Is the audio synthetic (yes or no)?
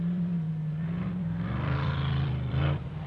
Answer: yes